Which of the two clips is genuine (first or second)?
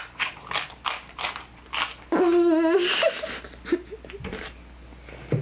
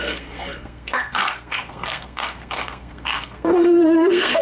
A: first